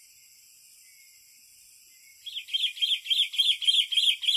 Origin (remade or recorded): recorded